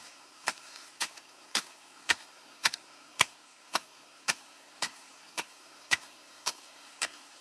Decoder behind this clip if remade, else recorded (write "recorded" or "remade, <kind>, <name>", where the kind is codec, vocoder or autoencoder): remade, codec, SNAC